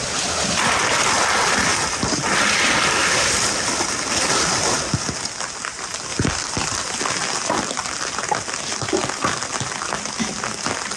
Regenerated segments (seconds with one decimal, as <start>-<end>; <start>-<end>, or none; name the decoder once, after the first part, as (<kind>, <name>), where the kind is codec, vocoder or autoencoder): none